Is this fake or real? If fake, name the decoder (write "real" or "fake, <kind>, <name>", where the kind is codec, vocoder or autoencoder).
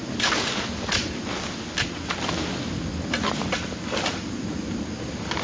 real